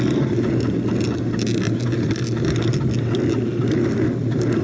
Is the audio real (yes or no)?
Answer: yes